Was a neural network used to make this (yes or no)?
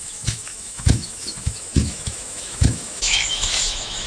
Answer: yes